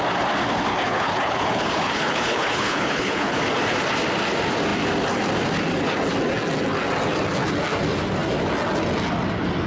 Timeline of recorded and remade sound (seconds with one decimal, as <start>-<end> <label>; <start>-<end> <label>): 0.0-0.7 recorded; 0.7-3.4 remade; 3.4-9.7 recorded